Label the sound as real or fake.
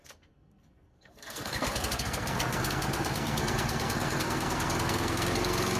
fake